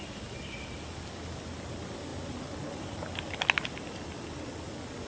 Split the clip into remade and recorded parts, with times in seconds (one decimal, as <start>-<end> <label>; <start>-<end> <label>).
0.0-5.1 recorded